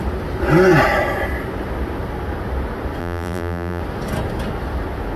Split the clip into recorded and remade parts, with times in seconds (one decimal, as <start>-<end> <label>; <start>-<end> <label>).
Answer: 0.0-3.0 recorded; 3.0-3.8 remade; 3.8-5.2 recorded